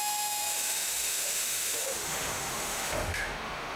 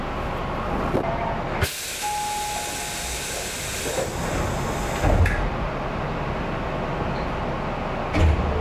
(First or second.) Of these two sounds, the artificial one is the first